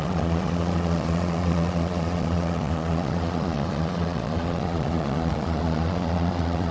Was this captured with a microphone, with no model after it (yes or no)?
no